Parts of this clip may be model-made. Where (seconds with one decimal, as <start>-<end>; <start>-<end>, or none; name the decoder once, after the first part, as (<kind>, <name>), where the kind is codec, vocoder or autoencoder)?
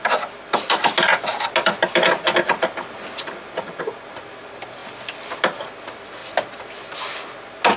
none